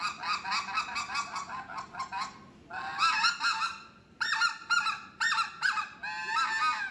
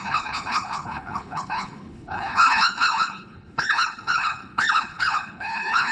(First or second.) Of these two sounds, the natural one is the first